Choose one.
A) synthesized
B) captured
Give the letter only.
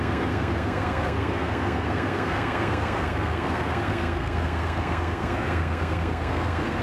A